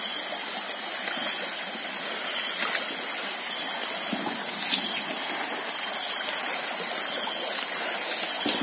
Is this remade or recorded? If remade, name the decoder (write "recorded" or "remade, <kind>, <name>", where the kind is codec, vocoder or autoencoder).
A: recorded